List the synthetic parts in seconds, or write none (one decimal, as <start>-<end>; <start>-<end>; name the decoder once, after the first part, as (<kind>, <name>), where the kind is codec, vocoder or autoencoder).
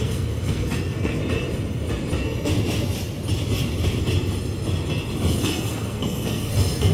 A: 0.0-1.2 (codec, SNAC); 5.3-6.9